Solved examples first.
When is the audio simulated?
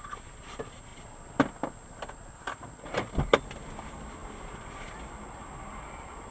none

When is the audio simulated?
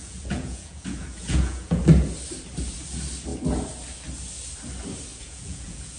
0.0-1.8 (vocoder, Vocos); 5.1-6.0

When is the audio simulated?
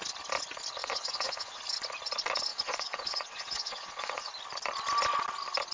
0.8-1.6 (vocoder, Vocos); 2.5-4.3